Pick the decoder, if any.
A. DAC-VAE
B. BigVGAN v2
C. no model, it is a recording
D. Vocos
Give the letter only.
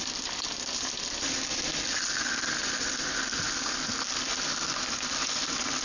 C